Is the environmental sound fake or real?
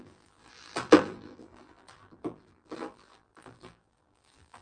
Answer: fake